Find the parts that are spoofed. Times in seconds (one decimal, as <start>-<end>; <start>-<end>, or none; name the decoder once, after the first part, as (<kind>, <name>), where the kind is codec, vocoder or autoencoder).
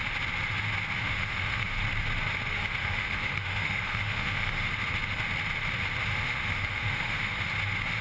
1.0-1.8 (autoencoder, DAC-VAE); 2.6-4.7; 6.1-7.3